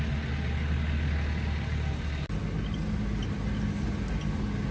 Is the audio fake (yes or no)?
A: no